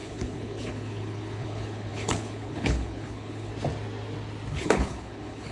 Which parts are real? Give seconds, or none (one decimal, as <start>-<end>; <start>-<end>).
3.5-4.5

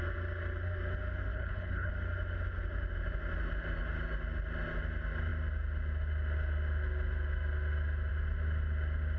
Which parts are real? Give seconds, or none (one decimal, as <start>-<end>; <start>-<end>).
0.0-1.3; 1.9-9.2

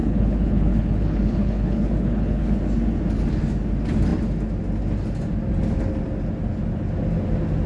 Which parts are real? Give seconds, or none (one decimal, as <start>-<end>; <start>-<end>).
2.6-7.7

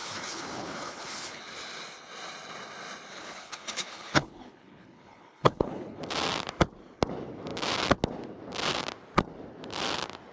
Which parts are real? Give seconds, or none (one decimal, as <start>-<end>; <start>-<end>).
1.4-3.1; 6.0-10.3

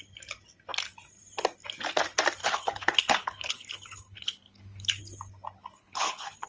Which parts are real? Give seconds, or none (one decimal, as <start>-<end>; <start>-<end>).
0.0-2.4; 5.0-5.8

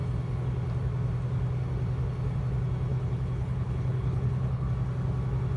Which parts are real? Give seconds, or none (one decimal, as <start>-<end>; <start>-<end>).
0.0-2.9; 4.7-5.6

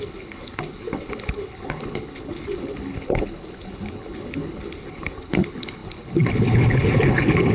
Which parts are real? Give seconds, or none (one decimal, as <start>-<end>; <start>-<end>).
none

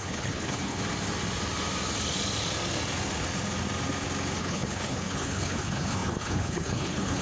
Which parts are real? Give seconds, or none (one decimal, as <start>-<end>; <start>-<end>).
0.8-4.4